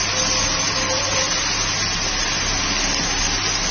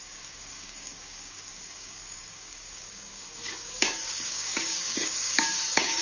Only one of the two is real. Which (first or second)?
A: first